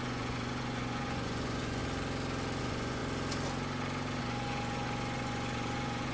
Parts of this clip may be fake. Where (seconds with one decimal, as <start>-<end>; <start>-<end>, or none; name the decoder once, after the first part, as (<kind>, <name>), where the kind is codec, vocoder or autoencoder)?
0.0-1.8 (vocoder, Vocos); 2.6-3.0; 4.2-6.1